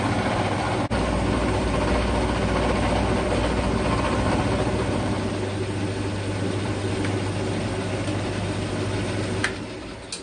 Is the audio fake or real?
real